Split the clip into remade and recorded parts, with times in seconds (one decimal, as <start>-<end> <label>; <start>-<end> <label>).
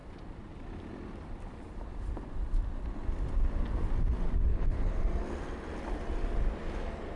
0.0-4.5 recorded; 4.5-5.0 remade; 5.0-7.2 recorded